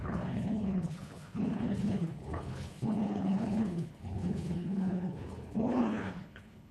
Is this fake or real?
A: fake